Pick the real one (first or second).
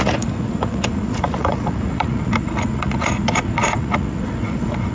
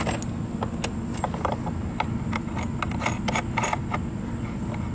second